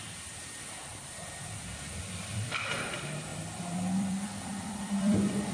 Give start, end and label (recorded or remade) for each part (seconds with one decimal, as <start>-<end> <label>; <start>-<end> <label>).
0.0-0.9 recorded; 0.9-2.8 remade; 2.8-3.3 recorded; 3.3-5.5 remade